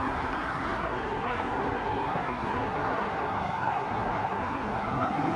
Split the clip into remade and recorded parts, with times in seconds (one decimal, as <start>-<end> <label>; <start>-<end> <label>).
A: 0.0-5.4 remade

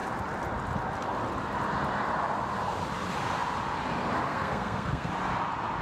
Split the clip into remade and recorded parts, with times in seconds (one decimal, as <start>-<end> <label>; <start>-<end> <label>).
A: 0.0-4.3 recorded; 4.3-5.1 remade; 5.1-5.8 recorded

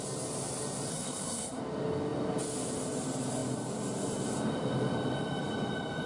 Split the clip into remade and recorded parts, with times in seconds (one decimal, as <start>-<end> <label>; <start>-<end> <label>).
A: 0.0-0.9 recorded; 0.9-1.6 remade; 1.6-6.1 recorded

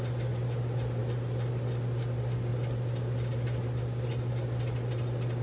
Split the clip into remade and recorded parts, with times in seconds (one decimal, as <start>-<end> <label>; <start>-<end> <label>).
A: 0.0-5.4 recorded

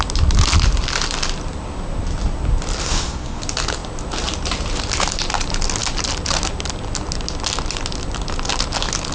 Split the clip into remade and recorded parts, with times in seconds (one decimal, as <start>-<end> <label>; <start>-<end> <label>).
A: 0.0-2.8 recorded; 2.8-3.4 remade; 3.4-9.1 recorded

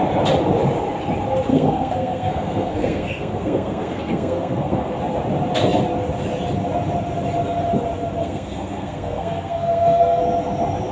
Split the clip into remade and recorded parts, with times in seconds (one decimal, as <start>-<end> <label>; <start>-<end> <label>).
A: 0.0-1.5 recorded; 1.5-5.0 remade; 5.0-8.2 recorded; 8.2-10.2 remade; 10.2-10.9 recorded